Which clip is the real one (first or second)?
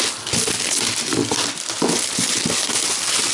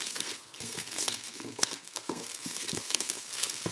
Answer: first